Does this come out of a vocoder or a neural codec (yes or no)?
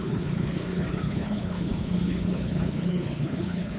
yes